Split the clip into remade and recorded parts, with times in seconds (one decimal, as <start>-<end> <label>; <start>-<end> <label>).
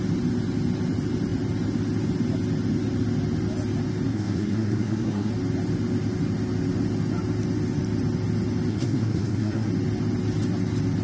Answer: 0.0-4.1 recorded; 4.1-5.3 remade; 5.3-8.7 recorded; 8.7-9.7 remade; 9.7-11.0 recorded